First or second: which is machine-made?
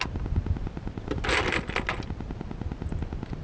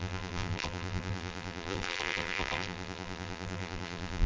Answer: second